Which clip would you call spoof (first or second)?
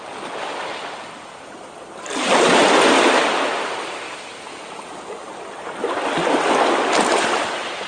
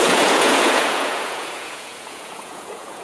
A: second